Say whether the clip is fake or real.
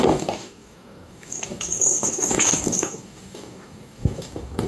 fake